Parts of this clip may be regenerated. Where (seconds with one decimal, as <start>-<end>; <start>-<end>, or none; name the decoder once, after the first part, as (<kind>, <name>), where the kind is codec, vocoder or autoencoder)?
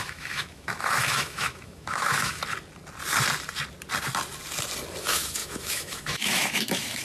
0.0-2.4 (autoencoder, DAC-VAE); 5.0-7.0